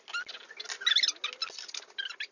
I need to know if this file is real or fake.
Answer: real